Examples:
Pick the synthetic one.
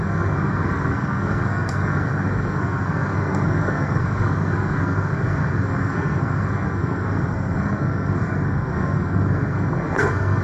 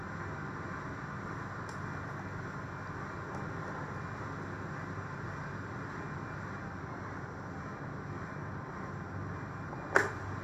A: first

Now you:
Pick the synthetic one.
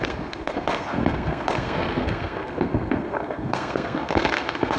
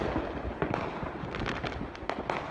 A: first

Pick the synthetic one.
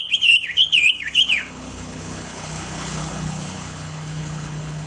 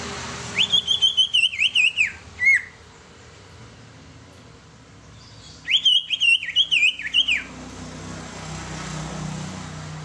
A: first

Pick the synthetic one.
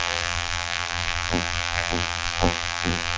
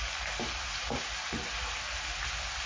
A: first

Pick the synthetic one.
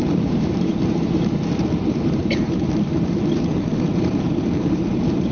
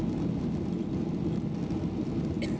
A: first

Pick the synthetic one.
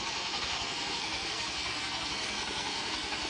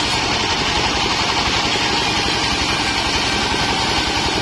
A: first